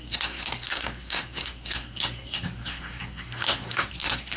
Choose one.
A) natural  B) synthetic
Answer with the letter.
B